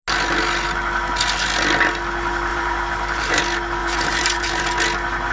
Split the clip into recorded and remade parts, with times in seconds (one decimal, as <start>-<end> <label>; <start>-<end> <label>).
0.0-2.5 recorded; 2.5-3.4 remade; 3.4-3.8 recorded; 3.8-4.6 remade; 4.6-5.3 recorded